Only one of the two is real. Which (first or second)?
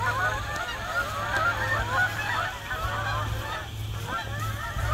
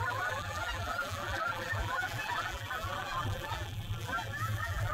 first